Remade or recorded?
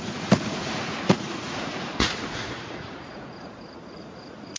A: remade